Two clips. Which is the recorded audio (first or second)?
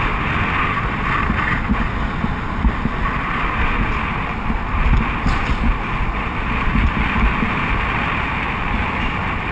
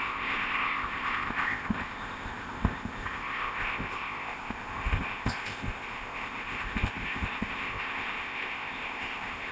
first